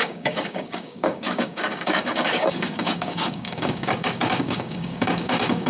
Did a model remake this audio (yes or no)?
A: yes